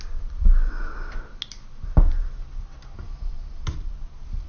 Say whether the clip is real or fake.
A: real